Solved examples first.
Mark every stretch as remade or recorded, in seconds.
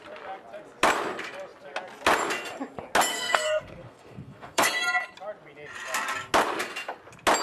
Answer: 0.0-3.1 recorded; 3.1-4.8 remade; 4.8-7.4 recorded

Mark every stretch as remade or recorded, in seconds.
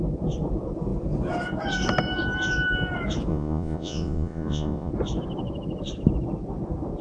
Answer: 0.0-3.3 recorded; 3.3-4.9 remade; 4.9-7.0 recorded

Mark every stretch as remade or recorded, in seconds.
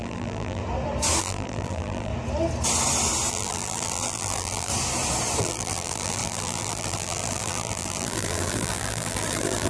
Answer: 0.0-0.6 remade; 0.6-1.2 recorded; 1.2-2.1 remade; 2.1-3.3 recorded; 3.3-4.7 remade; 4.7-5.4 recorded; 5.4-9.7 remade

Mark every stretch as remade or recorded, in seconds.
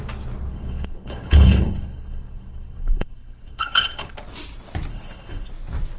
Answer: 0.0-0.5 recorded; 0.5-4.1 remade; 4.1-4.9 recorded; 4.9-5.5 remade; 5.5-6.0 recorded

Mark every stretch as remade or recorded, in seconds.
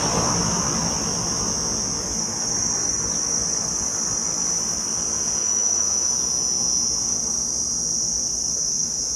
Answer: 0.0-5.4 recorded; 5.4-6.1 remade; 6.1-8.5 recorded; 8.5-9.2 remade